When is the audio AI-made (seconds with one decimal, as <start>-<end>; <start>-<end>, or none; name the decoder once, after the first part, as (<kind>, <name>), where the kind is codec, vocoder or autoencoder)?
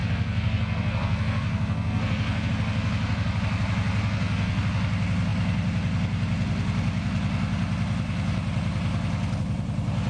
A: 0.0-2.5 (codec, SNAC); 4.0-4.6